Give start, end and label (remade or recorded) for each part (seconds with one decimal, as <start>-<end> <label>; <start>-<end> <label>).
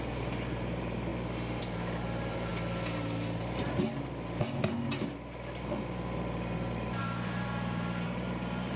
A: 0.0-1.1 remade; 1.1-1.6 recorded; 1.6-2.5 remade; 2.5-7.0 recorded; 7.0-8.8 remade